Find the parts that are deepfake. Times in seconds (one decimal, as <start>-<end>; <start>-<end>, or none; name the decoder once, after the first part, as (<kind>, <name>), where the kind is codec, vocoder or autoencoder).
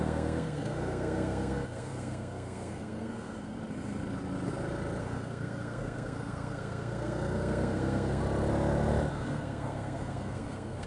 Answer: 0.0-3.6 (codec, SNAC); 5.0-8.2; 9.1-10.9